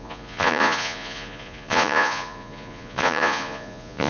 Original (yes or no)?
no